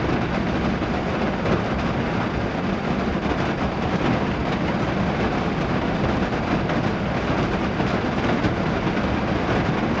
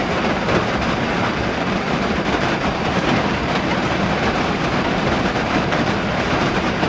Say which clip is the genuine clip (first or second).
first